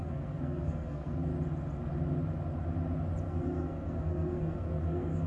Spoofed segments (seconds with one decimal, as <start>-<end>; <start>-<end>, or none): 0.0-1.3; 3.3-5.3